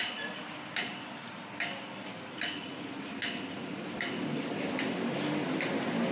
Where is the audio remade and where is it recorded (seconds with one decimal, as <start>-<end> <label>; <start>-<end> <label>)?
0.0-6.1 recorded